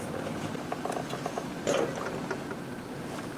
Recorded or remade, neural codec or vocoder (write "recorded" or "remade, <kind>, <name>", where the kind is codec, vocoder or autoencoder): recorded